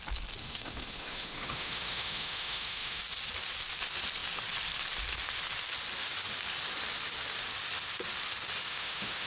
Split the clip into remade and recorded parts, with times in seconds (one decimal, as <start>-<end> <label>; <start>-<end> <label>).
0.0-0.4 recorded; 0.4-3.0 remade; 3.0-8.7 recorded; 8.7-9.3 remade

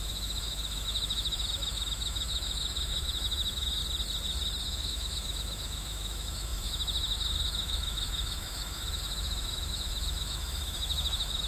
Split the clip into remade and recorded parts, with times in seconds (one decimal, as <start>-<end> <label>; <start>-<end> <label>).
0.0-3.8 remade; 3.8-4.6 recorded; 4.6-11.5 remade

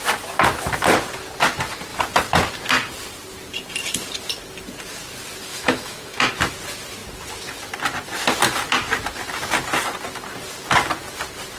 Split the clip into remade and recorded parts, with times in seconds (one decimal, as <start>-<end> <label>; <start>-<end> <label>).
0.0-5.5 recorded; 5.5-6.3 remade; 6.3-11.6 recorded